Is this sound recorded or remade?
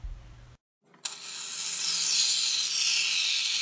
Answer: recorded